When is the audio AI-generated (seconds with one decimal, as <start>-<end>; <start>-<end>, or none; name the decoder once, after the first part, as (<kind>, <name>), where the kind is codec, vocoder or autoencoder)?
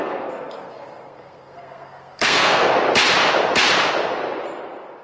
0.0-2.7 (codec, SNAC)